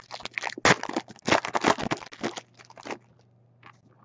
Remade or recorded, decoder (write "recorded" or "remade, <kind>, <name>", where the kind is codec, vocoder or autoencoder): recorded